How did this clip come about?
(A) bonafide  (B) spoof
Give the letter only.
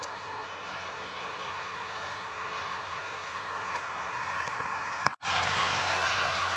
B